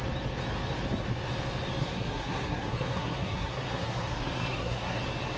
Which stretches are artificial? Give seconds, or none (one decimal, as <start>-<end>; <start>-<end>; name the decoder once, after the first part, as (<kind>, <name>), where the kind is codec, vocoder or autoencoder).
1.8-5.0 (codec, SNAC)